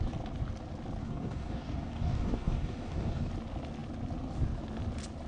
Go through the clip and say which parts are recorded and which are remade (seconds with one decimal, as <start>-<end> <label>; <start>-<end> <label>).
0.0-1.0 recorded; 1.0-3.3 remade; 3.3-5.3 recorded